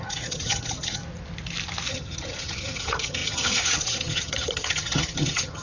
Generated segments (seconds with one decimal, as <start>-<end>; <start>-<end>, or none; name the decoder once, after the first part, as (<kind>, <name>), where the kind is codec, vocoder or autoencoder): 0.0-1.0 (vocoder, HiFi-GAN); 1.9-5.6